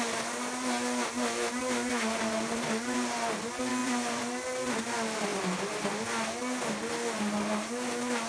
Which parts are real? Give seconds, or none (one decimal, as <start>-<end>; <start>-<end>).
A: 0.0-3.8; 4.8-5.3; 6.0-8.3